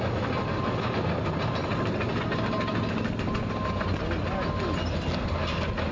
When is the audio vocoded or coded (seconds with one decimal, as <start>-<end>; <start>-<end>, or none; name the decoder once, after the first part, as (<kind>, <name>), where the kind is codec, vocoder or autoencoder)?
none